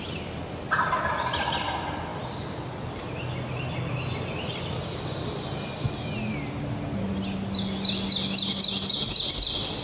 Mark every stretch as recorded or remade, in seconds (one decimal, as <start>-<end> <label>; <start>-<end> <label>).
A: 0.0-9.8 recorded